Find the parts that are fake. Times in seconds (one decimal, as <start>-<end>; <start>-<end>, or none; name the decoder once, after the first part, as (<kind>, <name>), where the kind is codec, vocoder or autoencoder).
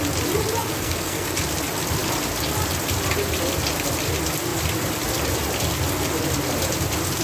0.6-1.4 (codec, SNAC)